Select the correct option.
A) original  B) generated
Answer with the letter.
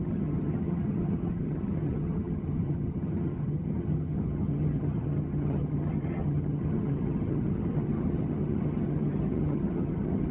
B